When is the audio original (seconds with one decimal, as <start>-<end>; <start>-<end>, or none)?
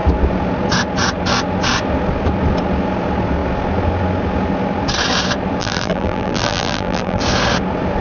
0.0-5.6; 7.2-8.0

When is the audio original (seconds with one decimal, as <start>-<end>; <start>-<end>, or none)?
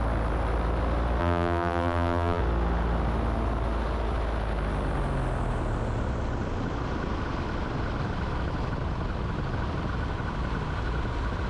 0.0-1.2; 2.4-11.5